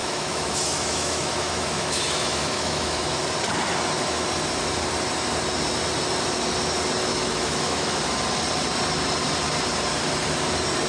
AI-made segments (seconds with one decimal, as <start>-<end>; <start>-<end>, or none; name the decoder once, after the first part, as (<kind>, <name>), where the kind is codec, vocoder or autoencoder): 0.0-3.2 (autoencoder, DAC-VAE); 7.1-8.0